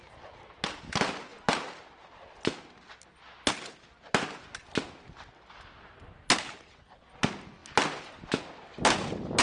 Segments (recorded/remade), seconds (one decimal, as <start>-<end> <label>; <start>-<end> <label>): 0.0-9.4 recorded